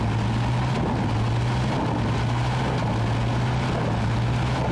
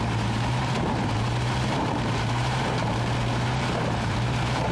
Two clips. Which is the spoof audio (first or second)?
second